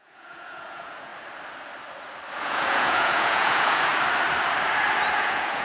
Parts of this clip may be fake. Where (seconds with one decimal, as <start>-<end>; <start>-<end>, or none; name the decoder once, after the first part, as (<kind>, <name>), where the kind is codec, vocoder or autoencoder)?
0.0-1.1 (vocoder, Vocos); 2.4-3.9; 5.1-5.6